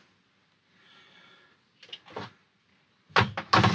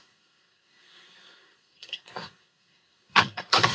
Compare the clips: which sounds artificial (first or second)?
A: second